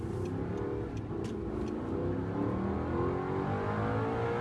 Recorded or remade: recorded